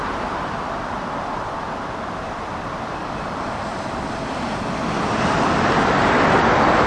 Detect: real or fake fake